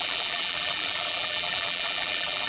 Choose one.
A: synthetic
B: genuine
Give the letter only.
A